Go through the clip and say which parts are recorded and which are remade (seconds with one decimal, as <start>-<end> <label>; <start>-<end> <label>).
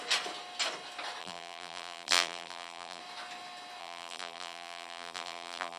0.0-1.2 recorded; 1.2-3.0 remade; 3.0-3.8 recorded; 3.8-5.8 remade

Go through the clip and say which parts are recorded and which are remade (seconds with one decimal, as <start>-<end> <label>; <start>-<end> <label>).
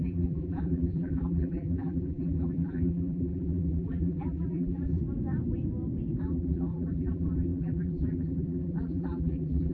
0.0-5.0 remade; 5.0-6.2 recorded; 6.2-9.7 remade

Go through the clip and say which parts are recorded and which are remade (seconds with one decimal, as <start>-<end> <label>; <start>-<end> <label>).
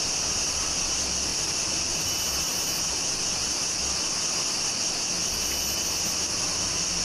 0.0-7.0 recorded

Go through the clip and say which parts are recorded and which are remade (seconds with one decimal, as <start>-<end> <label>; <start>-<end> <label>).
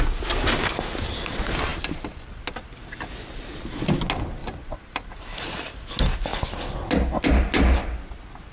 0.0-1.7 recorded; 1.7-2.4 remade; 2.4-4.4 recorded; 4.4-5.6 remade; 5.6-8.5 recorded